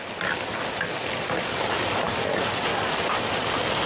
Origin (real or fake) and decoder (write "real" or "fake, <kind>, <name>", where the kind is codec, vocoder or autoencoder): real